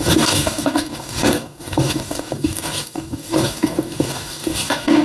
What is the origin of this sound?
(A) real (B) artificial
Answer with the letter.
B